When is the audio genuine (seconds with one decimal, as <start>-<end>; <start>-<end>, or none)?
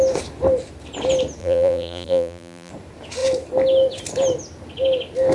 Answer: 0.0-1.4; 2.7-5.3